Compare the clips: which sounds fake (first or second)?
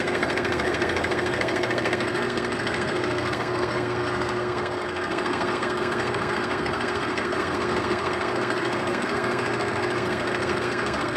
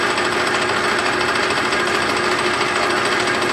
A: first